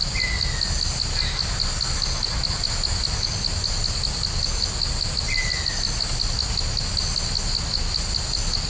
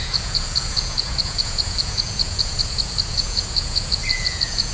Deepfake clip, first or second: second